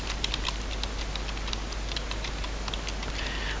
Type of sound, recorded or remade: recorded